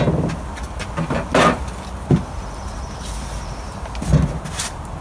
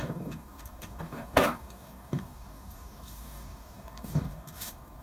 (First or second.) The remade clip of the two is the second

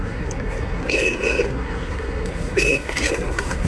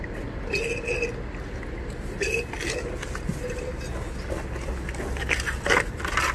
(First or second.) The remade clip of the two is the first